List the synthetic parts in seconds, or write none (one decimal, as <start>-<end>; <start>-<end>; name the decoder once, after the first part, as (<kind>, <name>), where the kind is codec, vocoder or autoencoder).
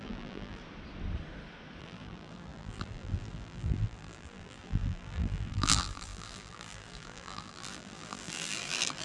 0.0-0.6 (vocoder, BigVGAN v2); 1.8-9.0